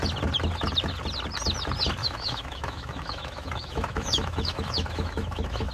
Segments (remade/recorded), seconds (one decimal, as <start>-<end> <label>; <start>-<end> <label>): 0.0-2.0 recorded; 2.0-5.7 remade